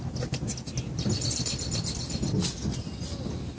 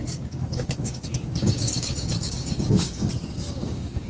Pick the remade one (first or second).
second